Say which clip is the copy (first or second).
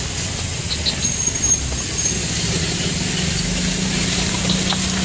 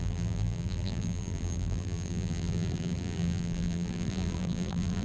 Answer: second